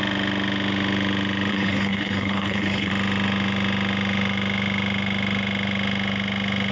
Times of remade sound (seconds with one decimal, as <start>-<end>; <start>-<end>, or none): 1.5-2.9